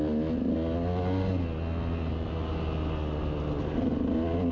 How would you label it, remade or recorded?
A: recorded